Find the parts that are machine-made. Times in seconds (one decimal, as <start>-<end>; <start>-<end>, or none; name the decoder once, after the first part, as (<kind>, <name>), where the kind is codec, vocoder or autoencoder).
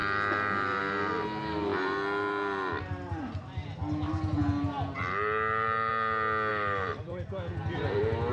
0.0-0.8 (vocoder, BigVGAN v2); 1.7-5.9; 6.5-8.3